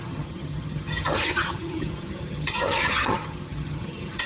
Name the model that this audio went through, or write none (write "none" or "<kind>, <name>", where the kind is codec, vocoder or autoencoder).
vocoder, HiFi-GAN